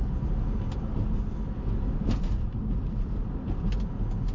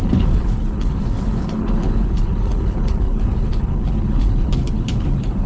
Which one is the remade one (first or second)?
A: second